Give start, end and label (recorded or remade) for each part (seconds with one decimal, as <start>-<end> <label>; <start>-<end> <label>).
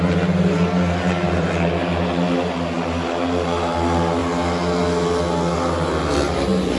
0.0-6.8 recorded